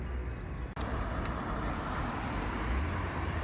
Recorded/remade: recorded